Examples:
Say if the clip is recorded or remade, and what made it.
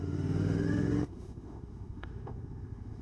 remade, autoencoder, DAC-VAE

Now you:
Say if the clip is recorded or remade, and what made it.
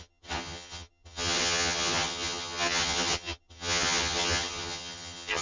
remade, vocoder, HiFi-GAN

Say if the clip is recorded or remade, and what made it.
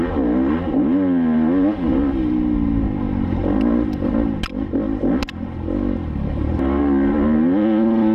recorded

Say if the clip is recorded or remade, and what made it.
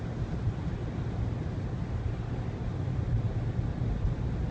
recorded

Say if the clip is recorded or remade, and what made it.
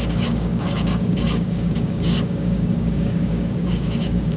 remade, codec, DAC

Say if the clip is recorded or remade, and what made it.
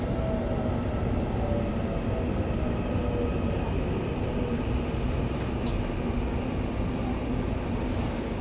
recorded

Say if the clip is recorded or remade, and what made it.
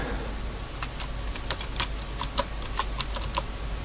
recorded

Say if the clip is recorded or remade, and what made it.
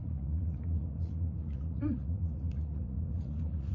remade, vocoder, Vocos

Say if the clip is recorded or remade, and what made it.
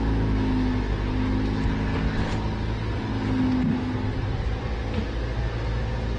recorded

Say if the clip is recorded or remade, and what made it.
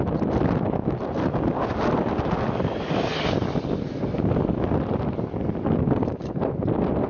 recorded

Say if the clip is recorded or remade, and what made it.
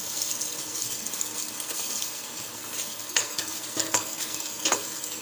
remade, codec, SNAC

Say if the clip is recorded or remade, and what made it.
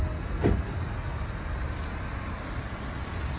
recorded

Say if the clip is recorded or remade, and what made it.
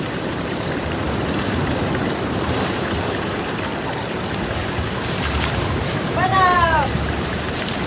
remade, vocoder, BigVGAN v2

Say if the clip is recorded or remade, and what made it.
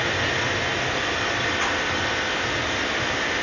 recorded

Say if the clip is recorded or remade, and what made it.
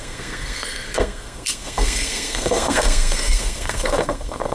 remade, codec, SNAC